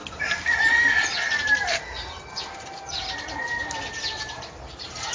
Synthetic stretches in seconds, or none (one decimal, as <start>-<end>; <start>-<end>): none